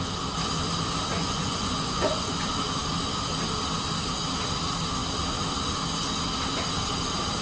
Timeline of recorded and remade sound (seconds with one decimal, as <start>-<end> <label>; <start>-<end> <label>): 0.0-1.1 recorded; 1.1-2.4 remade; 2.4-7.4 recorded